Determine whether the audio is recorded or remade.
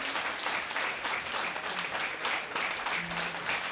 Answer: recorded